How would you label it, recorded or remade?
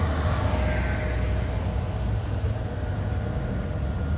recorded